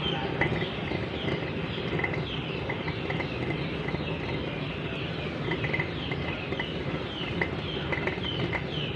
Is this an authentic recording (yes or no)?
yes